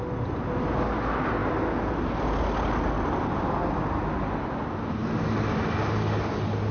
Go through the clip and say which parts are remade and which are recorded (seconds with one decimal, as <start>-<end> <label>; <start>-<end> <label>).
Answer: 0.0-6.7 recorded